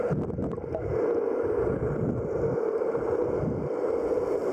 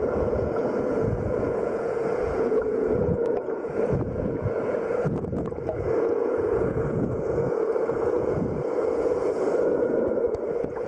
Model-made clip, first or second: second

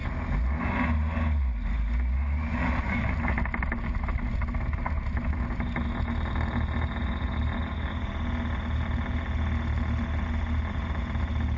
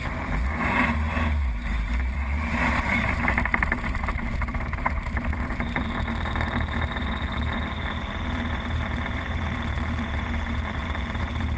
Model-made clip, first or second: second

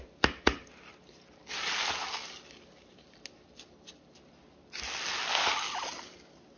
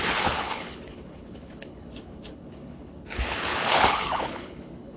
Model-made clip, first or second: second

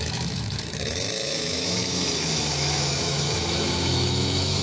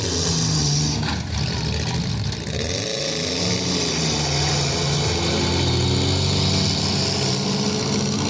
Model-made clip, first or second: first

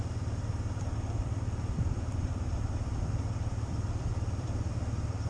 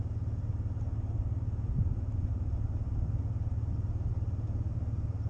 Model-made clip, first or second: first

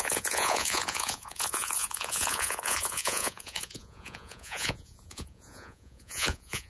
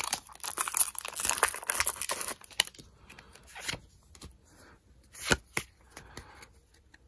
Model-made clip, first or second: first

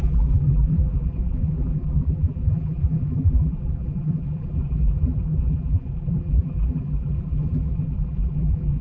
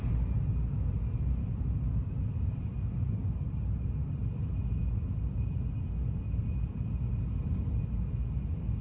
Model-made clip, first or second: first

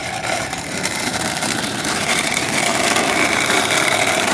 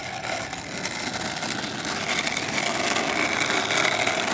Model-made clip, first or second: first